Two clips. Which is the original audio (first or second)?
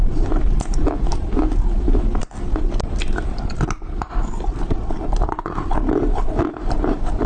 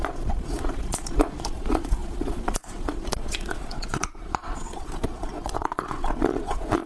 first